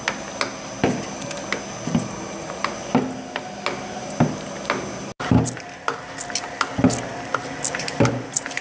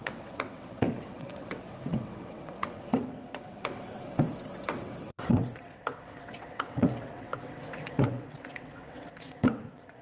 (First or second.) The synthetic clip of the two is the second